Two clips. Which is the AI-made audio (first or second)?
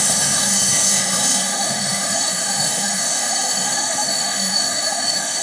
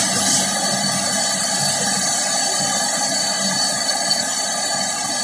first